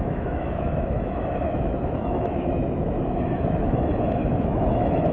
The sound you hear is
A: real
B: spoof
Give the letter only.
B